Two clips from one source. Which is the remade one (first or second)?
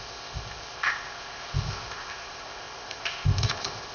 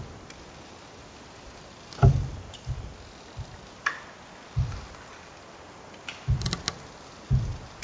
first